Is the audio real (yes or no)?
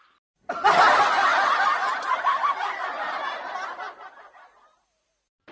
yes